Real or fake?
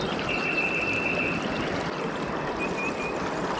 real